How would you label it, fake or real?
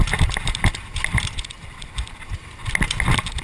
real